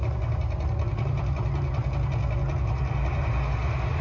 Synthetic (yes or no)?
no